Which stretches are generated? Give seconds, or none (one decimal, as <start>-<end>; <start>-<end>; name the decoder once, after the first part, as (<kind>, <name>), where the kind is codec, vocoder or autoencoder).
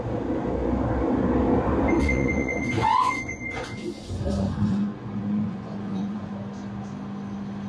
2.0-6.3 (vocoder, Vocos)